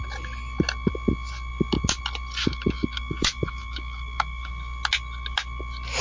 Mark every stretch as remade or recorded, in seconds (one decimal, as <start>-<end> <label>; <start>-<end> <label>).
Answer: 0.0-2.4 recorded; 2.4-4.5 remade; 4.5-6.0 recorded